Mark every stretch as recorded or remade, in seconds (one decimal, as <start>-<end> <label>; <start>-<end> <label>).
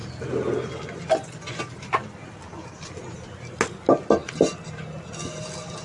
0.0-5.8 recorded